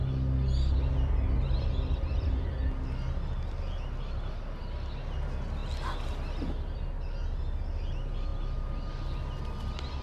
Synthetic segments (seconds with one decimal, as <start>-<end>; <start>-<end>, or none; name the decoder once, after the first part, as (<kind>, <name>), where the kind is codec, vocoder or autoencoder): none